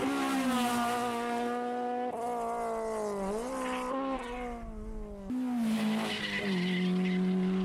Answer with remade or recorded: recorded